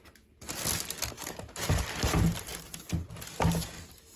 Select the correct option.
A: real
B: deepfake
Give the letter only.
A